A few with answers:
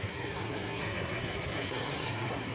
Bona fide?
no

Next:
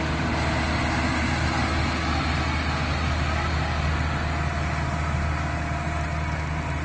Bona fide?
yes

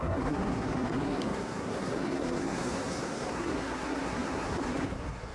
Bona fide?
no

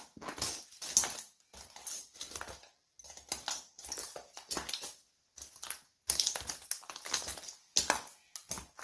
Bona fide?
yes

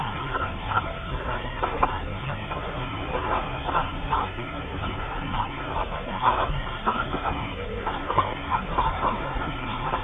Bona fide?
no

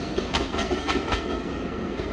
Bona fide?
no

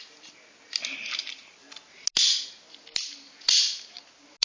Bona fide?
yes